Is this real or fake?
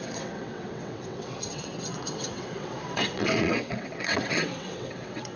fake